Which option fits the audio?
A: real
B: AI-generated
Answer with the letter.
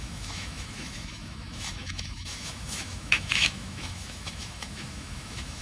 B